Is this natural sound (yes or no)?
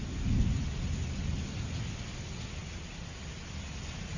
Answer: yes